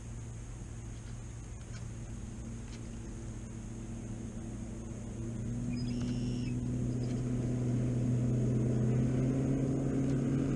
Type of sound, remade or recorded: recorded